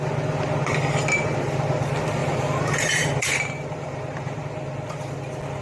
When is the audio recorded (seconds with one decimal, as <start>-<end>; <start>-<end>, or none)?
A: 0.0-2.2; 4.4-5.6